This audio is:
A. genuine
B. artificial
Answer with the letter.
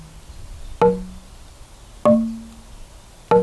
A